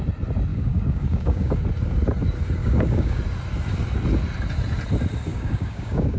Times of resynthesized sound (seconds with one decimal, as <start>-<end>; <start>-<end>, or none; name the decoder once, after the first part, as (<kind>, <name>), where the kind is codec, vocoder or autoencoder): 0.5-1.6 (codec, DAC); 2.6-3.2; 5.3-6.2